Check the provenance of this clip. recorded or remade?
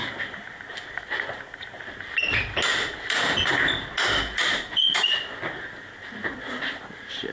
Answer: recorded